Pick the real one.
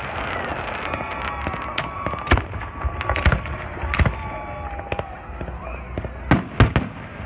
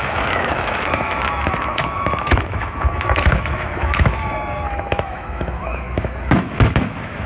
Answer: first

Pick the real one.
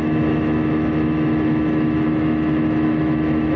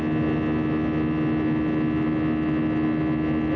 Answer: second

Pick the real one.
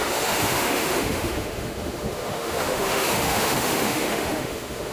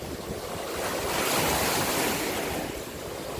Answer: second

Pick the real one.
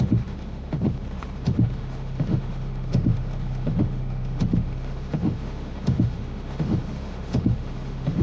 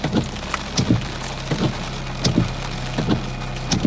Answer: second